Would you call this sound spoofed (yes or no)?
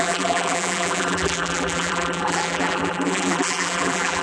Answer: yes